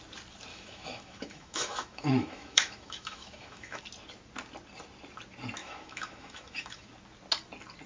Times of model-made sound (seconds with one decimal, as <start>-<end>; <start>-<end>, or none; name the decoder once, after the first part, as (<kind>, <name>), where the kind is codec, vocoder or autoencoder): 0.5-3.8 (autoencoder, DAC-VAE); 5.6-6.9